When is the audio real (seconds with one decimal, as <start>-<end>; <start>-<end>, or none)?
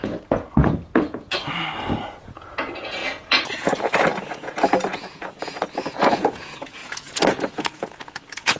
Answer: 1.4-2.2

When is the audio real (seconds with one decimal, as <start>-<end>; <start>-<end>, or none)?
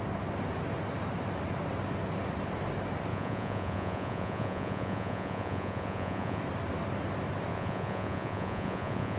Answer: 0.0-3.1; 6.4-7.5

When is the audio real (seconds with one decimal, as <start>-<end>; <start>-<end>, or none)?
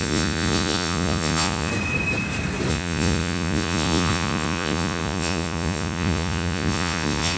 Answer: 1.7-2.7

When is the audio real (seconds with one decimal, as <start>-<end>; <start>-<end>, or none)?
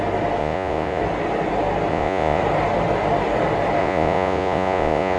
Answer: 0.0-0.4; 1.0-1.9; 2.4-3.8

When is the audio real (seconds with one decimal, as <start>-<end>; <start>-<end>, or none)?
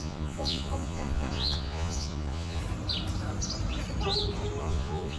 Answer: 2.6-4.6